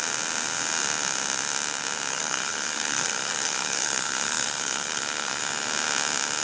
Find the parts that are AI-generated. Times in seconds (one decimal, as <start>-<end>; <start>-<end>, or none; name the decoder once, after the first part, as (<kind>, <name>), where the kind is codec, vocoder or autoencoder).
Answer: 2.1-5.4 (codec, SNAC)